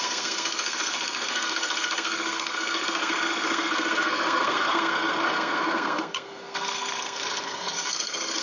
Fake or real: fake